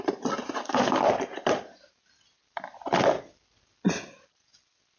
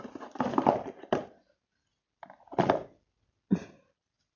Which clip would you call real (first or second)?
first